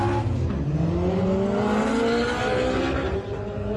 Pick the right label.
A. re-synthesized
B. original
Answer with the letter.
B